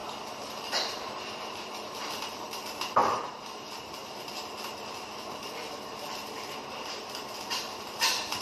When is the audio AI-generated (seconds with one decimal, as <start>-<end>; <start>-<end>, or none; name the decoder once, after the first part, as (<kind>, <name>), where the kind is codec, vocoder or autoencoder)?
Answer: 0.5-8.4 (vocoder, BigVGAN v2)